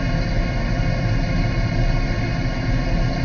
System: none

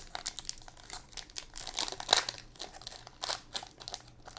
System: none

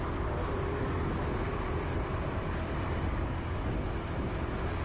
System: none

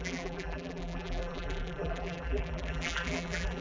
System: vocoder, BigVGAN v2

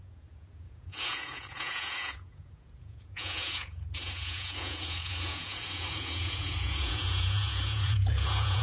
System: vocoder, Vocos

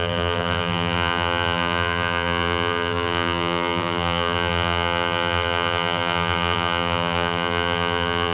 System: vocoder, BigVGAN v2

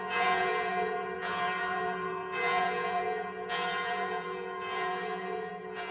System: vocoder, Vocos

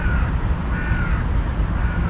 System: none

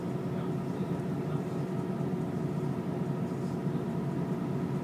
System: none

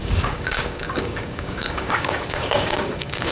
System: codec, DAC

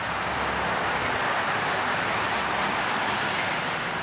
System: none